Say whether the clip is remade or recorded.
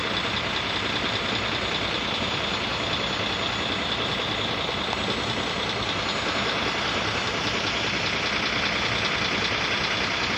recorded